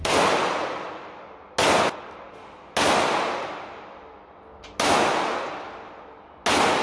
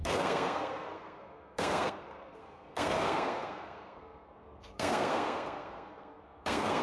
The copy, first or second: second